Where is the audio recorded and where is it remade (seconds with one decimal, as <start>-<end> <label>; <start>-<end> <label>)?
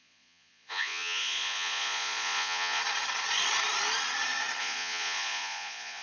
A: 0.0-2.8 remade; 2.8-4.6 recorded; 4.6-6.0 remade